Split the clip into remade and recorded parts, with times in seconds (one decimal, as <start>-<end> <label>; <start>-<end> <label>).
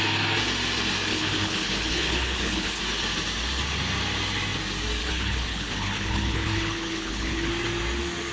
0.0-1.1 recorded; 1.1-2.8 remade; 2.8-5.0 recorded; 5.0-7.5 remade; 7.5-8.3 recorded